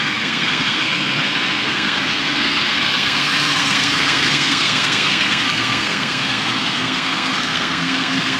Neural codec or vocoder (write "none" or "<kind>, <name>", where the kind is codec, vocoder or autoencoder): codec, SNAC